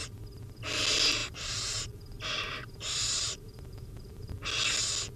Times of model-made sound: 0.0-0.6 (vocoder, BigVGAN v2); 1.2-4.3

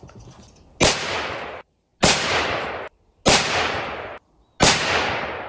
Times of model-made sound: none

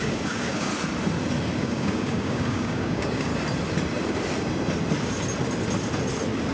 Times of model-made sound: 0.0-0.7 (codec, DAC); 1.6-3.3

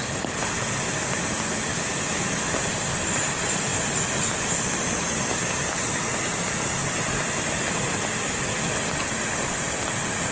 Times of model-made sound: 1.7-2.4 (autoencoder, DAC-VAE)

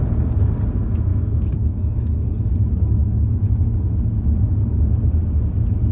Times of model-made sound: 1.1-2.1 (autoencoder, DAC-VAE)

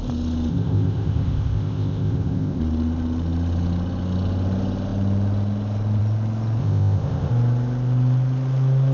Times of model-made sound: 0.5-2.6 (codec, ZipCodec); 6.6-7.3

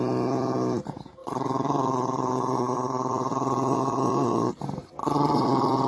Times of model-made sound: 1.2-4.5 (vocoder, Vocos); 5.0-5.9

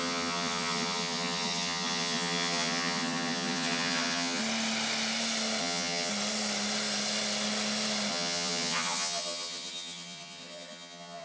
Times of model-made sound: 0.0-4.4 (vocoder, HiFi-GAN); 5.6-6.1; 8.1-11.2